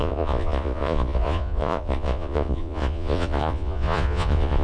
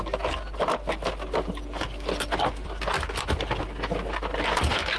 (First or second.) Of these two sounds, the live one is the second